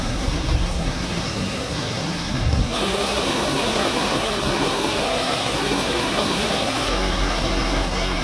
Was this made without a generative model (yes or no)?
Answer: no